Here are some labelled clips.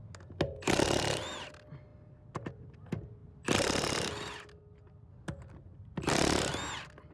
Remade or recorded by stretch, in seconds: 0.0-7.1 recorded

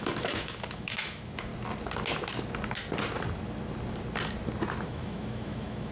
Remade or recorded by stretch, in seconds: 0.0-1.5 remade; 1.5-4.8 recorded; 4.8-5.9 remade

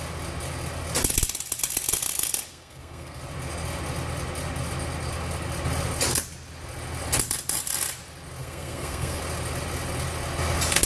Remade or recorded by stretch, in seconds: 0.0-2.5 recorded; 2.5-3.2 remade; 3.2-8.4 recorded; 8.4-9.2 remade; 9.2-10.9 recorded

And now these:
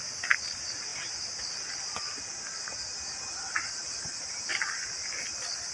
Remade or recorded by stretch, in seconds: 0.0-5.7 recorded

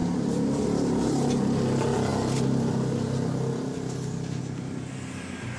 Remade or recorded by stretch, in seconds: 0.0-1.4 remade; 1.4-5.6 recorded